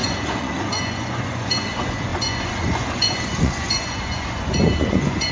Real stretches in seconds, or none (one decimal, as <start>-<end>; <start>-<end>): none